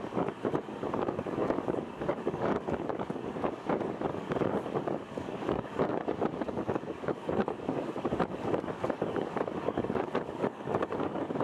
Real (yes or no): no